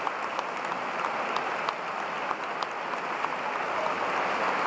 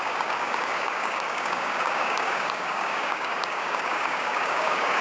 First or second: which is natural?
first